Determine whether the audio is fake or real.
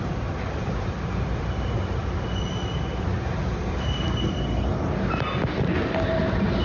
real